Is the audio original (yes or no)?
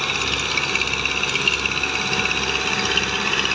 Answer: yes